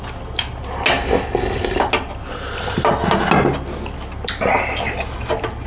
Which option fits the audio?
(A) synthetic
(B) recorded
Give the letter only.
B